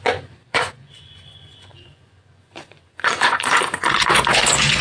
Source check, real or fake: fake